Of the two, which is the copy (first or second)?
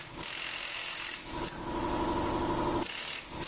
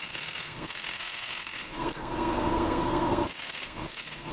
second